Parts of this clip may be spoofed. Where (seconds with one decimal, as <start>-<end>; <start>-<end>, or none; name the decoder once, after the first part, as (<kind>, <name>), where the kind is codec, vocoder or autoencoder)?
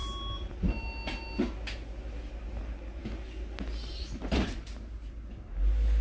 none